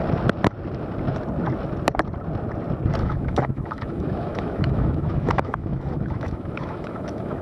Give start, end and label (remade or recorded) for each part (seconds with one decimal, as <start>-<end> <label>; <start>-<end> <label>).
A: 0.0-3.0 recorded; 3.0-7.4 remade